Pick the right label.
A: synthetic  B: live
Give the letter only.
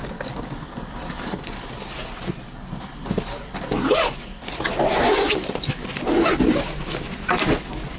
B